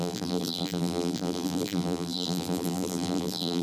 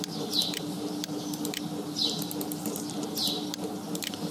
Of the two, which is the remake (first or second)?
first